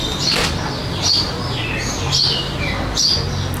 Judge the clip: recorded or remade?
recorded